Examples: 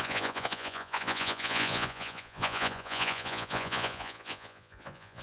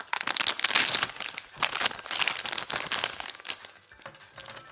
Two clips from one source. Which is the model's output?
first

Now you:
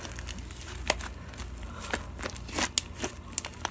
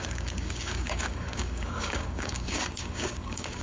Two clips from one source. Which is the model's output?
second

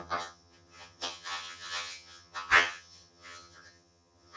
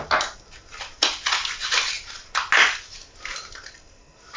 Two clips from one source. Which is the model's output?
first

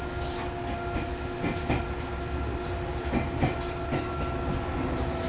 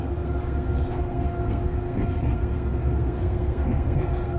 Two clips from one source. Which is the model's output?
second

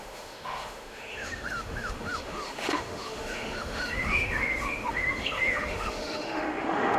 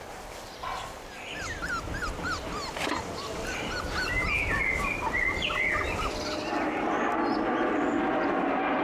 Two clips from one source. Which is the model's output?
first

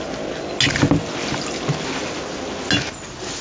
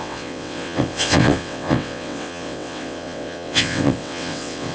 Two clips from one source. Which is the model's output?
second